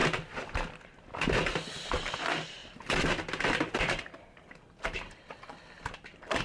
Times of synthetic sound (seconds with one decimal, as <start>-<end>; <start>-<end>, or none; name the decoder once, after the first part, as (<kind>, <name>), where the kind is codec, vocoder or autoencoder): 2.6-6.4 (vocoder, BigVGAN v2)